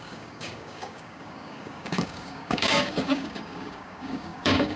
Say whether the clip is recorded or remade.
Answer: remade